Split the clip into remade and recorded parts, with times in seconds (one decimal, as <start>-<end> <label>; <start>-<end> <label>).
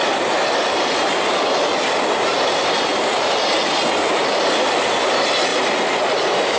0.0-6.6 recorded